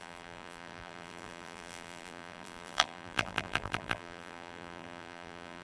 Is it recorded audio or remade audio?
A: remade